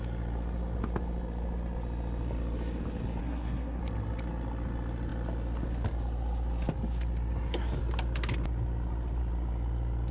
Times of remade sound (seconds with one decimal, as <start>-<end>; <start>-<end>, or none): 3.2-3.8